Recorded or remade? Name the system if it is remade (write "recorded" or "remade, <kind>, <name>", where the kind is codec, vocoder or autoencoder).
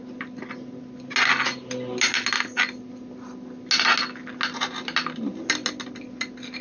recorded